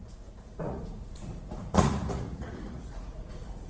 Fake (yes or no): yes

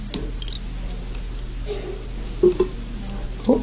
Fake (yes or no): no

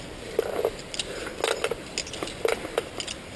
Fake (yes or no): no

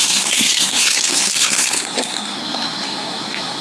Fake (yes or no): yes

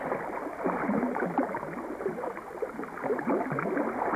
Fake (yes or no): no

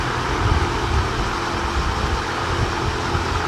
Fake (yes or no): no